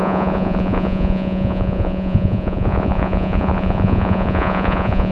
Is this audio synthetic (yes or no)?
yes